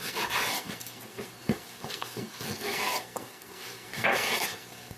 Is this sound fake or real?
fake